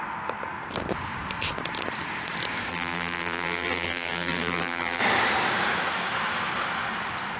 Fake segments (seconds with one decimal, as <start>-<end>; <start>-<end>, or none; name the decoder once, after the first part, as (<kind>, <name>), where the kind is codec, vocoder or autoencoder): 2.7-5.0 (vocoder, BigVGAN v2)